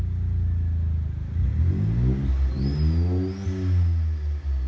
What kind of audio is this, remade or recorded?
recorded